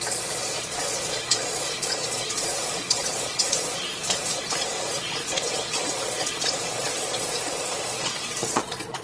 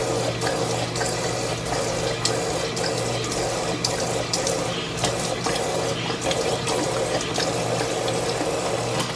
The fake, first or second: first